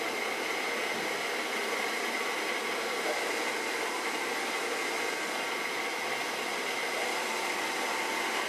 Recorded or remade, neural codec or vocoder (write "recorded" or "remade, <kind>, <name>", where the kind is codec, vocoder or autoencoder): remade, vocoder, BigVGAN v2